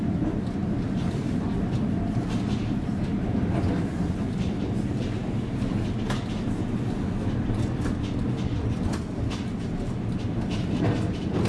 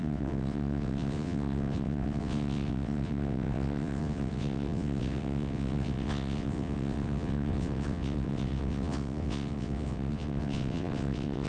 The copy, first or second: second